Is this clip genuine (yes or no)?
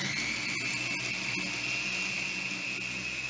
yes